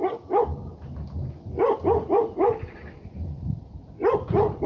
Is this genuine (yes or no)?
no